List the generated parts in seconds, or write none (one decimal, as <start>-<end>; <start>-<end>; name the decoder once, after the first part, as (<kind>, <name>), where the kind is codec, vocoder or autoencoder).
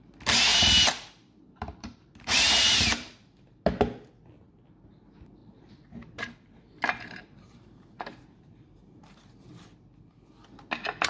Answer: 0.5-3.6 (vocoder, BigVGAN v2); 5.4-9.5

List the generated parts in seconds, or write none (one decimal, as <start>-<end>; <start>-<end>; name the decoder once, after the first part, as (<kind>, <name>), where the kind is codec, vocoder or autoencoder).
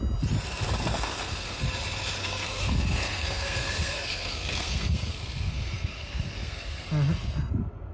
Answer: 0.9-1.6 (codec, SNAC); 2.2-6.9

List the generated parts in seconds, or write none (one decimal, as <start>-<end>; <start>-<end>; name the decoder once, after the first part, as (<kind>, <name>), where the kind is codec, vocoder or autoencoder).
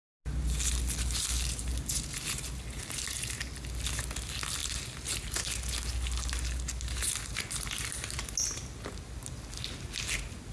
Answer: none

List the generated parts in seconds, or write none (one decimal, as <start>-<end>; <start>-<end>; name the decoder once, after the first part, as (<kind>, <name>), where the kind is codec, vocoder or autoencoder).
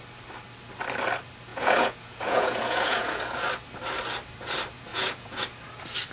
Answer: 1.5-3.5 (vocoder, Vocos); 4.9-5.4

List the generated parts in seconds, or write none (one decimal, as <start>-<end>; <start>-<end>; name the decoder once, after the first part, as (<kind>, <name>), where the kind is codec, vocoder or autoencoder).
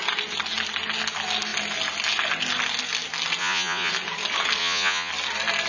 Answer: 3.4-3.9 (vocoder, Vocos); 4.6-5.1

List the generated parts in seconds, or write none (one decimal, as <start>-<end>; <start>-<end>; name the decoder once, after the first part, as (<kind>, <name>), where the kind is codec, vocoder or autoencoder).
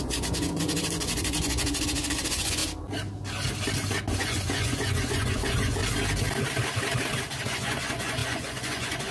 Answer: 0.0-2.6 (vocoder, Vocos); 4.2-5.8; 7.4-9.1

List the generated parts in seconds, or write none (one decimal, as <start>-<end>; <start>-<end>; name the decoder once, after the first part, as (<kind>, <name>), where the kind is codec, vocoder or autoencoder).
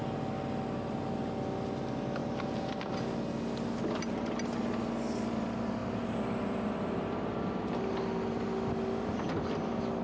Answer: 2.2-2.7 (vocoder, BigVGAN v2); 5.8-7.7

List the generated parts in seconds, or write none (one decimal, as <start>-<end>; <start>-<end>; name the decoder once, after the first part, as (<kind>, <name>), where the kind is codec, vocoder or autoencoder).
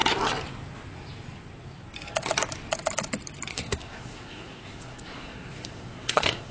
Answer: 3.5-6.5 (codec, SNAC)